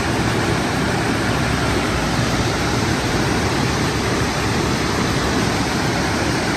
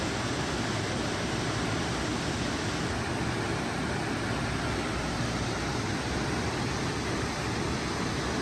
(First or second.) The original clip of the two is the second